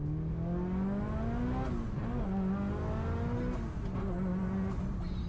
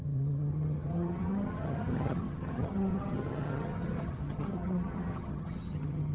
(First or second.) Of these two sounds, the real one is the first